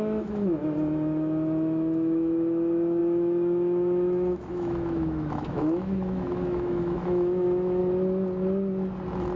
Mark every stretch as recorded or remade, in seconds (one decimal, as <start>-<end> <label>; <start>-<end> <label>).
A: 0.0-7.8 remade; 7.8-9.4 recorded